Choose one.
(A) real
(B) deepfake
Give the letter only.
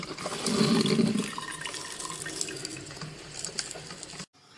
A